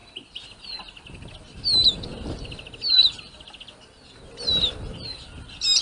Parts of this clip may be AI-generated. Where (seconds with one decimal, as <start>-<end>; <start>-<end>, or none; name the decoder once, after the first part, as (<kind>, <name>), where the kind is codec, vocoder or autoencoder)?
none